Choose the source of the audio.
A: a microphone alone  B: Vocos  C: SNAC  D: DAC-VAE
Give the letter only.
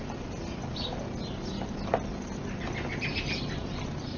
A